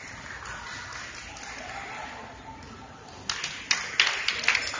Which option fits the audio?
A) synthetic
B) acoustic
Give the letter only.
B